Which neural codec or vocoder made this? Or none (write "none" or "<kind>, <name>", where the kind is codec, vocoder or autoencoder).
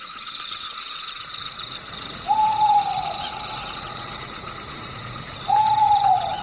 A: vocoder, Vocos